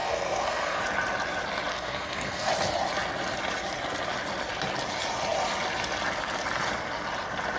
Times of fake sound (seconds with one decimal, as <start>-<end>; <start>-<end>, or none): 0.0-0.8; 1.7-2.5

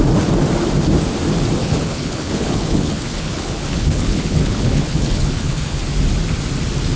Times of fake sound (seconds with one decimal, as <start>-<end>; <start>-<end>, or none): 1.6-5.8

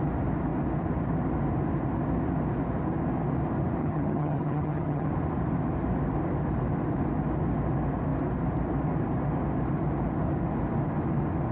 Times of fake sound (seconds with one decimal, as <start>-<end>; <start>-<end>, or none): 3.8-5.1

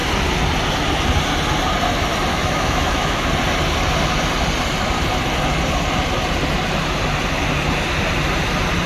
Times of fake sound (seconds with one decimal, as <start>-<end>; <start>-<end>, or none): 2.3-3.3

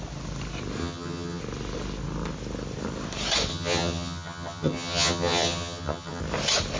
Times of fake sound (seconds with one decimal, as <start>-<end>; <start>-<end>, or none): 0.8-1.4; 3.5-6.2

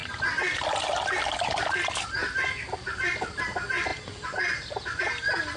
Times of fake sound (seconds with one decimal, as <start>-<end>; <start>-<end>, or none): none

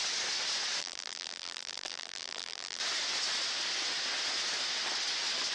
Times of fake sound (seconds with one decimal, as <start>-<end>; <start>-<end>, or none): 0.8-2.8